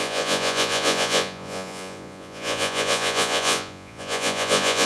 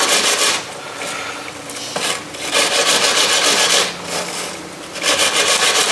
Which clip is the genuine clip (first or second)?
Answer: second